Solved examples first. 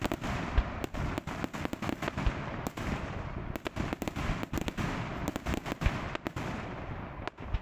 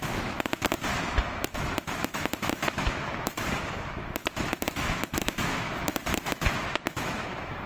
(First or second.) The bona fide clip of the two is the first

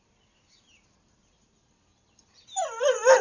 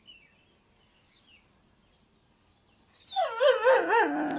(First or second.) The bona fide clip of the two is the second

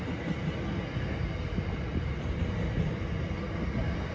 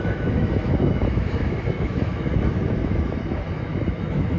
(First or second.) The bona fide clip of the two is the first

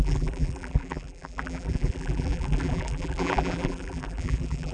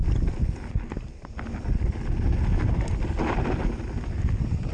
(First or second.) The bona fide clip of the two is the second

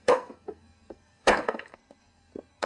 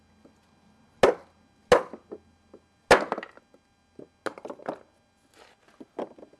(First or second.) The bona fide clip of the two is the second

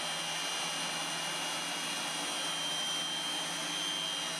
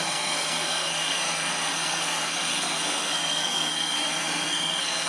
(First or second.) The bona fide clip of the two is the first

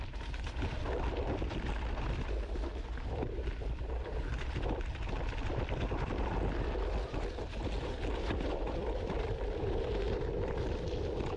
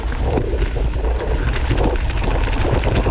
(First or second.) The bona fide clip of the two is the second